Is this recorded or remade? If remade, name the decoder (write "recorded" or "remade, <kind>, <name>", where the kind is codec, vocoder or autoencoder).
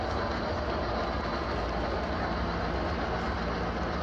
recorded